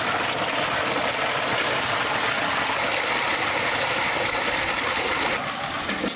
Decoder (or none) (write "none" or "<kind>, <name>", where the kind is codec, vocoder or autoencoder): none